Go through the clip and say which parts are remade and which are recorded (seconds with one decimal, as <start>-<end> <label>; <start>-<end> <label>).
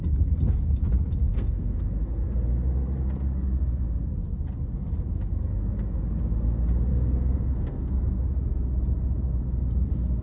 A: 0.0-1.3 recorded; 1.3-1.8 remade; 1.8-6.9 recorded; 6.9-8.2 remade; 8.2-10.2 recorded